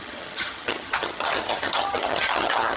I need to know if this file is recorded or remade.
remade